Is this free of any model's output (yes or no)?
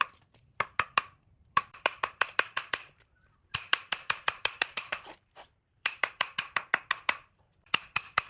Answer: no